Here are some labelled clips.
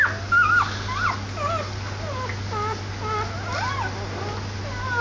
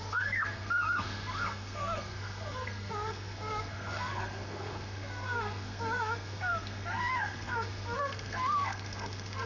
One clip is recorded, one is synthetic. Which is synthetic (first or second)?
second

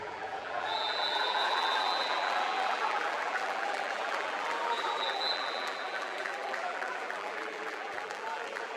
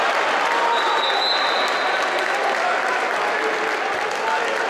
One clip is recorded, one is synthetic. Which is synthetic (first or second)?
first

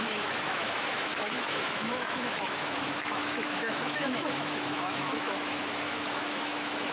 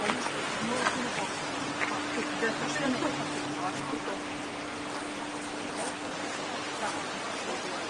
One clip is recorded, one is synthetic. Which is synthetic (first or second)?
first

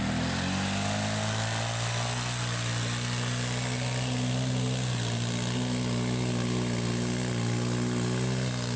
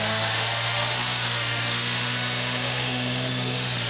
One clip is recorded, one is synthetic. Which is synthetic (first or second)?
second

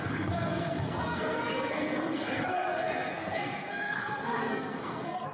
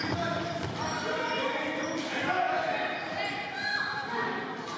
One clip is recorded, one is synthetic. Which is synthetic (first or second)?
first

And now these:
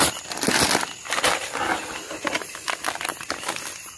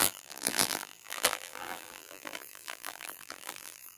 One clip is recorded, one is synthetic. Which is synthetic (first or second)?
second